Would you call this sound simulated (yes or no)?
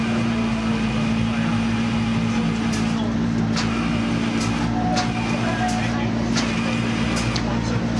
no